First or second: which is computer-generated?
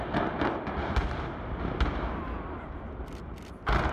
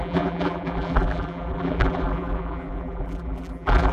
second